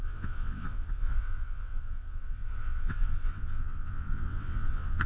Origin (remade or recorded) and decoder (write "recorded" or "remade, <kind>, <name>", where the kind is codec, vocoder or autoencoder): remade, vocoder, WaveNeXt